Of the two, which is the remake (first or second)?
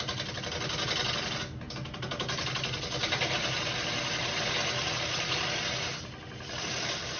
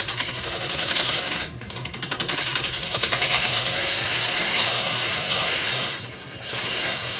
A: second